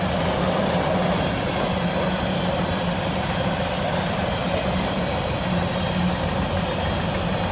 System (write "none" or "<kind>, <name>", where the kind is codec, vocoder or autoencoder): none